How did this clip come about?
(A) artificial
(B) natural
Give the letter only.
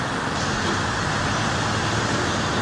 B